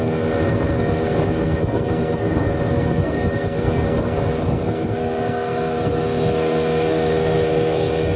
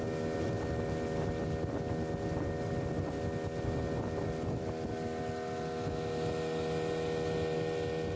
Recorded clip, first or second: second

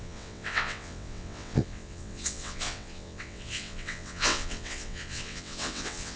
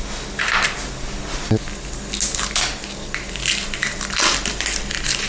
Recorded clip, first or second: second